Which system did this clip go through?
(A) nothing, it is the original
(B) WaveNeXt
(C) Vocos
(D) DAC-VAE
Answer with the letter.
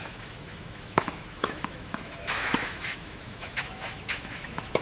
D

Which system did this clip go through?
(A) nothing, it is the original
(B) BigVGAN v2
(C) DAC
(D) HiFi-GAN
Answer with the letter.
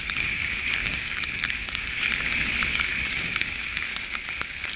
C